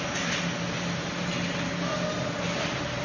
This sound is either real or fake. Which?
real